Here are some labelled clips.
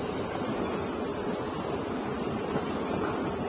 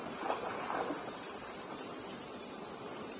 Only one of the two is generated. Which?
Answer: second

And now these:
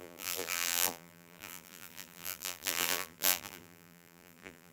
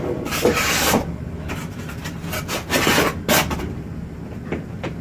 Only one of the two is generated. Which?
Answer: first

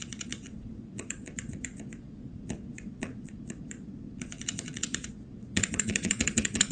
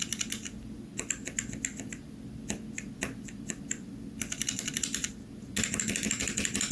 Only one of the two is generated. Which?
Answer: first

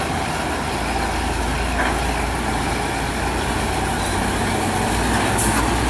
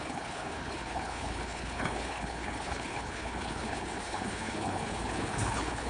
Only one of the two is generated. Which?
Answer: second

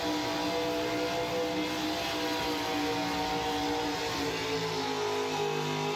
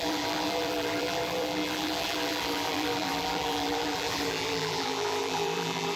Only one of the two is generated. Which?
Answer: second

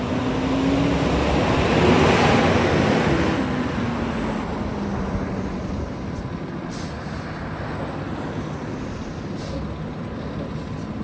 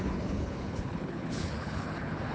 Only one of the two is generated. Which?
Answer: second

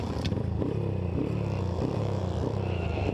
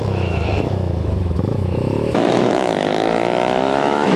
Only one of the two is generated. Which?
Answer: second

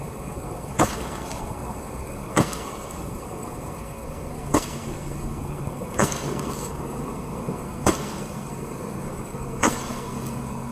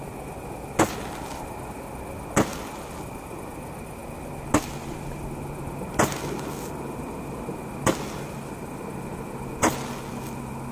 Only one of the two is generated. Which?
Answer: first